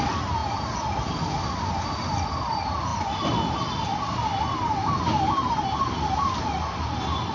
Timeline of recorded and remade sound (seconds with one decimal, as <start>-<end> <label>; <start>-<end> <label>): 0.0-7.3 recorded